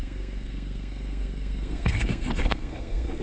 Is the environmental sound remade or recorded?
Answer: remade